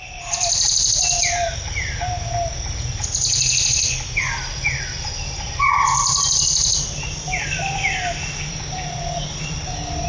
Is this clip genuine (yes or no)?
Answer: yes